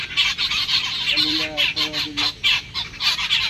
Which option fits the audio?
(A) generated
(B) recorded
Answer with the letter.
B